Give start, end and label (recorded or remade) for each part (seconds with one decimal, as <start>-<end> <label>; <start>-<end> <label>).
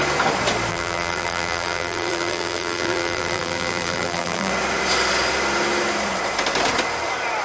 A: 0.0-0.7 recorded; 0.7-4.5 remade; 4.5-7.4 recorded